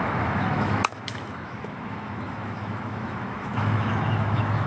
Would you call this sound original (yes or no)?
no